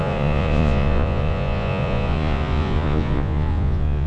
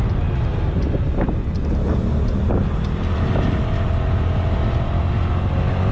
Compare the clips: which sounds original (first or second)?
second